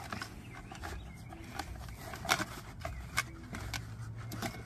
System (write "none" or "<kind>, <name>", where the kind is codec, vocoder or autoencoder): none